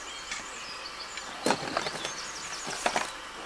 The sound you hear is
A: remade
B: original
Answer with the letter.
B